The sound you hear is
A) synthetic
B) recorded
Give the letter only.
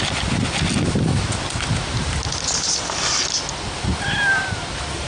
B